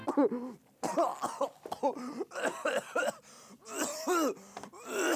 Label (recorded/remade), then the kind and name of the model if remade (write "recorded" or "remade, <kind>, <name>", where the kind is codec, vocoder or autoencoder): recorded